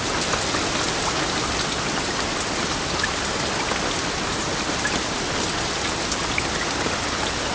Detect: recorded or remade recorded